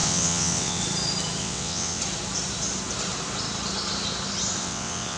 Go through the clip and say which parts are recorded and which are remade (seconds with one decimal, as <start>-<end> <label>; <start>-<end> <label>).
0.0-0.8 remade; 0.8-1.4 recorded; 1.4-2.0 remade; 2.0-4.6 recorded; 4.6-5.2 remade